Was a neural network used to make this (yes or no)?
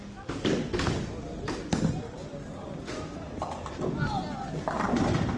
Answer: no